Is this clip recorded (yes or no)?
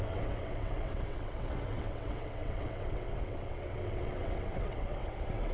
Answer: no